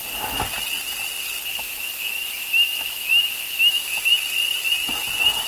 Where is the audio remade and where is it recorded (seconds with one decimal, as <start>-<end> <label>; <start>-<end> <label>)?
0.0-1.5 recorded; 1.5-4.0 remade; 4.0-5.5 recorded